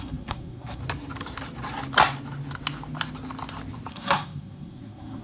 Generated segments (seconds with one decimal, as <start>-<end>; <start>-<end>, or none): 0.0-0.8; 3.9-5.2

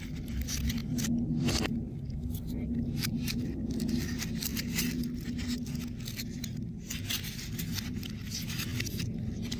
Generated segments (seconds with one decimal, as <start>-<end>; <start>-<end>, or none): none

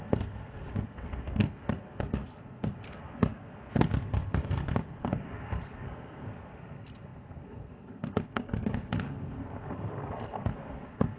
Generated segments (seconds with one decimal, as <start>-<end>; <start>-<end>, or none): 0.0-11.2

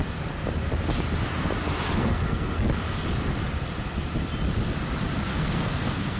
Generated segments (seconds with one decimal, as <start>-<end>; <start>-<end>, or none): 2.0-2.7; 5.3-6.2

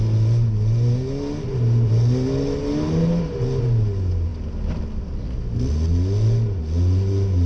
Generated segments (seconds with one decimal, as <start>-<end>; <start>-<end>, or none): none

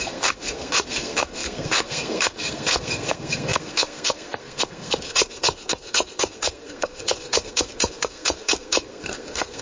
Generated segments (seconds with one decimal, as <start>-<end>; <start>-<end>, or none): 0.0-9.6

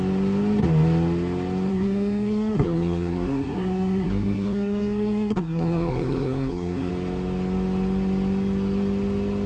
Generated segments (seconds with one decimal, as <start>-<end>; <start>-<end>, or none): 1.7-6.9